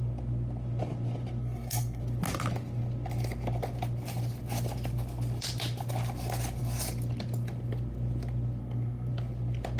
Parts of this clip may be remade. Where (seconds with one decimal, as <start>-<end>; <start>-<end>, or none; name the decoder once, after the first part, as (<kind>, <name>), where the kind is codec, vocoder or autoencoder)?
1.4-2.0 (codec, SNAC); 8.6-9.1